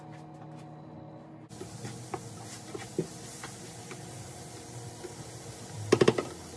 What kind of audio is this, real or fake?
real